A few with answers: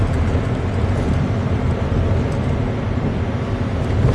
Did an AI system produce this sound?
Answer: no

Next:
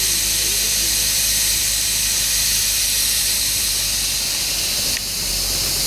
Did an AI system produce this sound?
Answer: no